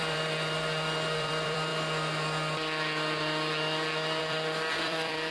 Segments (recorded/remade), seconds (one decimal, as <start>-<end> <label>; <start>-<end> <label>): 0.0-1.7 remade; 1.7-4.2 recorded; 4.2-5.3 remade